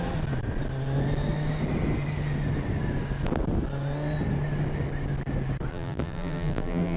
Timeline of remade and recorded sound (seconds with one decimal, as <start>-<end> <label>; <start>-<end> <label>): 0.0-5.7 recorded; 5.7-7.0 remade